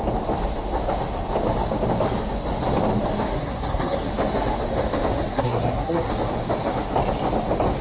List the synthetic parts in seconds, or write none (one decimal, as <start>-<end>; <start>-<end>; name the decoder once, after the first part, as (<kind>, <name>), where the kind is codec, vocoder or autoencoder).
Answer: 3.3-4.1 (codec, SNAC); 5.3-6.1